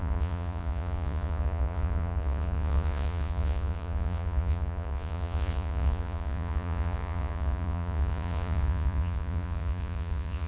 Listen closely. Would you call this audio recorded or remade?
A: remade